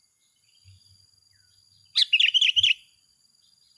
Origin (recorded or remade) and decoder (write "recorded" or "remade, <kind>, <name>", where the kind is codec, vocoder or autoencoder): recorded